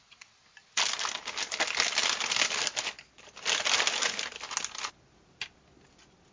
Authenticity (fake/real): real